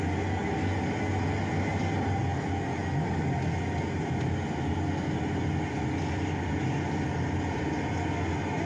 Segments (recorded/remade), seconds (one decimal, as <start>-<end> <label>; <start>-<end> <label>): 0.0-8.7 recorded